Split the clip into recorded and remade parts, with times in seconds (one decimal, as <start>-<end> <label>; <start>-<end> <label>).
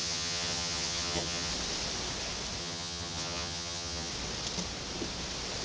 0.0-1.5 remade; 1.5-2.6 recorded; 2.6-4.1 remade; 4.1-5.6 recorded